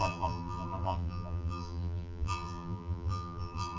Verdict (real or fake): fake